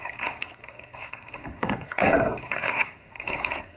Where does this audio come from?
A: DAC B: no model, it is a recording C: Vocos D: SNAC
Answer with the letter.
D